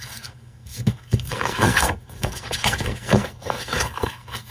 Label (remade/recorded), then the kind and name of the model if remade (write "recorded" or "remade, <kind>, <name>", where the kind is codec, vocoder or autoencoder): remade, codec, SNAC